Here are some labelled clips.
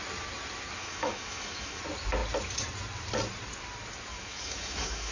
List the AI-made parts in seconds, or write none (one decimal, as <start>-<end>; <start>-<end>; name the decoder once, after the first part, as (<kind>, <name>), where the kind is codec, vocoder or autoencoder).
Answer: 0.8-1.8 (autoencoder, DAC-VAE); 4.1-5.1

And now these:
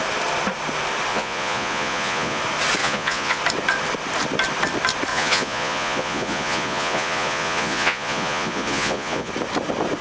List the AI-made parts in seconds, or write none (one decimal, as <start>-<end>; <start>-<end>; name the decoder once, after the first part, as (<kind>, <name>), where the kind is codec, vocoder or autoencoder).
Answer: 1.1-2.4 (vocoder, Vocos); 2.8-3.4; 5.1-9.3

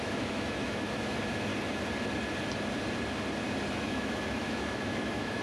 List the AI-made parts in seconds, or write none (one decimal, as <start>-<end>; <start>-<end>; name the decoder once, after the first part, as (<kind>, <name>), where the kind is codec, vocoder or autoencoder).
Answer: 0.0-1.5 (autoencoder, DAC-VAE); 3.7-5.4

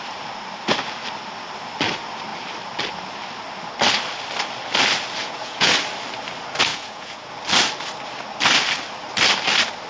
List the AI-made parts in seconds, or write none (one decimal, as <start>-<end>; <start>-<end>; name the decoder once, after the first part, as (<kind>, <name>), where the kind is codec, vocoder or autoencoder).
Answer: 5.2-5.7 (vocoder, Vocos); 6.7-7.3